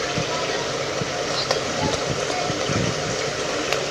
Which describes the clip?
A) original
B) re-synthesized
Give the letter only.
A